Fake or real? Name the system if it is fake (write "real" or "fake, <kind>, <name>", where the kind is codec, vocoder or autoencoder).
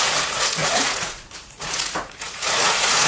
fake, vocoder, Vocos